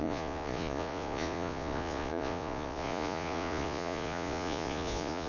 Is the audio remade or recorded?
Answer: remade